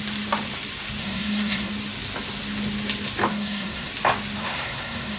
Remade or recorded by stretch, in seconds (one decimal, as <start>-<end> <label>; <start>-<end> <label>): 0.0-1.0 recorded; 1.0-1.7 remade; 1.7-3.3 recorded; 3.3-3.9 remade; 3.9-4.4 recorded; 4.4-5.2 remade